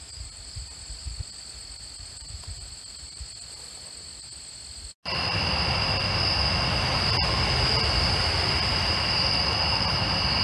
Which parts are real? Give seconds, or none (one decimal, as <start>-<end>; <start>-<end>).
0.0-10.4